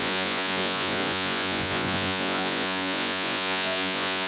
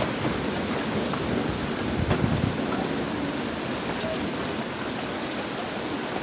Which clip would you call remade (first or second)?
first